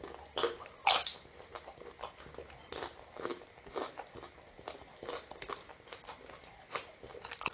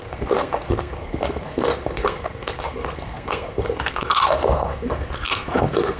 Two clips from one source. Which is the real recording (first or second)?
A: first